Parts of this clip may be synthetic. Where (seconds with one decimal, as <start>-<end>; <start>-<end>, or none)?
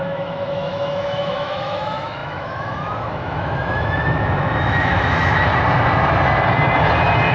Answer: 0.0-5.5